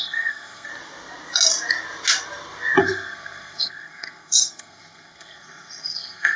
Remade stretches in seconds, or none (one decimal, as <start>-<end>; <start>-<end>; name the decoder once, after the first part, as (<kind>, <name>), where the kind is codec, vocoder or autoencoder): 0.0-0.7 (codec, SNAC); 2.8-6.4